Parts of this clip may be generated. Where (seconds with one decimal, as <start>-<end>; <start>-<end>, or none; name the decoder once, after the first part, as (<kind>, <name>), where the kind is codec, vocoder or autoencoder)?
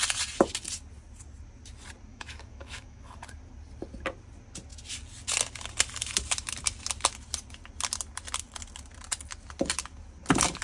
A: 2.1-3.0 (autoencoder, DAC-VAE)